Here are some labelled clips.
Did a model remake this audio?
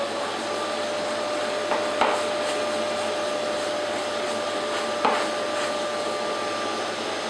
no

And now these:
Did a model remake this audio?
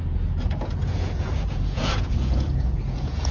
yes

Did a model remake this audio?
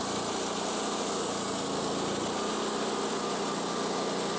no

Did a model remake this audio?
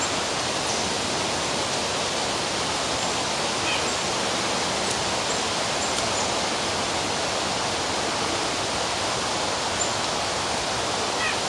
no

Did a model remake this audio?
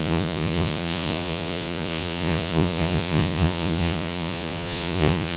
yes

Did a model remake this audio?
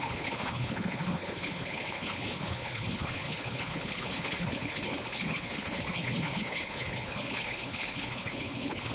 yes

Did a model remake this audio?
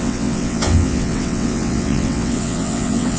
yes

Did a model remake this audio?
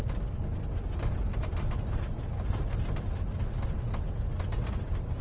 no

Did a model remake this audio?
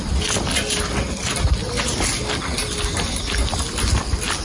no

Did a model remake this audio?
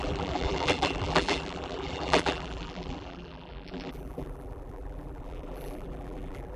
yes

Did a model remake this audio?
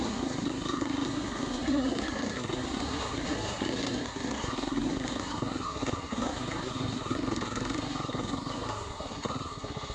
yes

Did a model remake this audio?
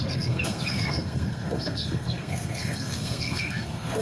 yes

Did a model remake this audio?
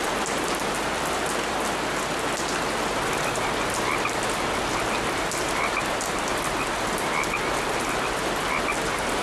no